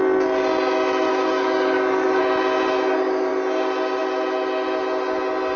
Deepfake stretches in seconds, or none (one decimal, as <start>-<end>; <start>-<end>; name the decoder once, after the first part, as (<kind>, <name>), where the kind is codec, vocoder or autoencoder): 1.1-2.2 (codec, DAC)